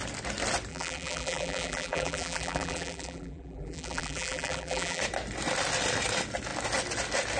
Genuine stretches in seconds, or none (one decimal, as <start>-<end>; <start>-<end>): 0.0-0.7; 5.0-7.4